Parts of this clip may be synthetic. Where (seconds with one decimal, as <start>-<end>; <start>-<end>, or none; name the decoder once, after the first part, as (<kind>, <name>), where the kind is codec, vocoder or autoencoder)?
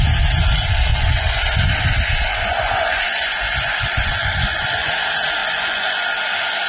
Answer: 0.9-1.4 (vocoder, Vocos); 2.3-4.9; 5.4-6.0